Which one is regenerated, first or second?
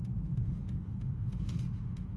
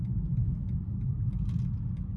first